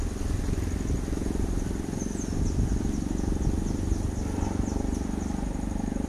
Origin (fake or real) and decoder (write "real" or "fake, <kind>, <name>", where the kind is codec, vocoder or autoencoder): real